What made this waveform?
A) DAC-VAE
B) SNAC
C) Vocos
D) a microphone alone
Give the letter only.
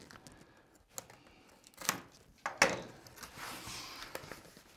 D